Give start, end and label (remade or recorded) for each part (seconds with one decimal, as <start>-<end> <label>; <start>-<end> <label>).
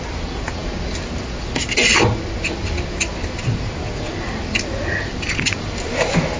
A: 0.0-6.4 recorded